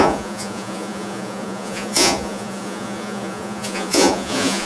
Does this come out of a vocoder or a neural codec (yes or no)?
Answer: yes